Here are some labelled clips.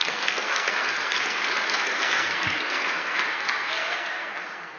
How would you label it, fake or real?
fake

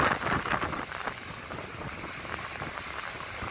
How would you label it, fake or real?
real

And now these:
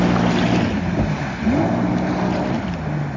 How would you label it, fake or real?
real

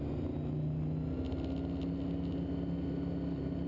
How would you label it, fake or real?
real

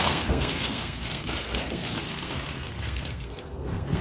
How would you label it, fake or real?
fake